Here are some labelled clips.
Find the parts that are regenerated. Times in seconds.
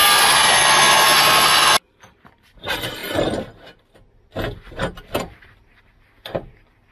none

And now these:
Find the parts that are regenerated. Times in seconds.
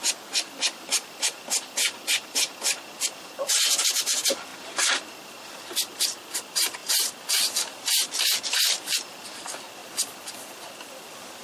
0.0-6.8 (vocoder, BigVGAN v2); 7.6-9.8; 10.6-11.4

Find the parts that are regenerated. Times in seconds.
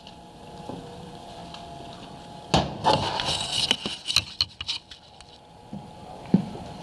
0.0-1.4 (vocoder, BigVGAN v2); 5.5-6.8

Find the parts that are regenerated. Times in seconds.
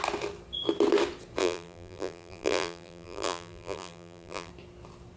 1.4-4.5 (vocoder, BigVGAN v2)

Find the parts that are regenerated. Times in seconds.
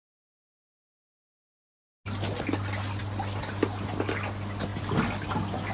none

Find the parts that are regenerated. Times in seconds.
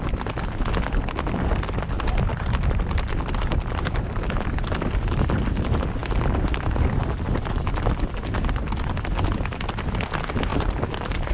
2.3-3.1 (vocoder, BigVGAN v2); 10.5-11.3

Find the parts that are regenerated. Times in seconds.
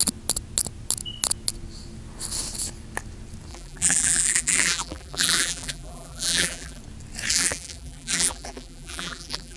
3.5-6.8 (vocoder, BigVGAN v2); 7.3-9.6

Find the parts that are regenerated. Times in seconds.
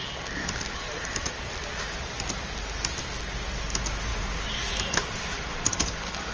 4.1-6.3 (vocoder, BigVGAN v2)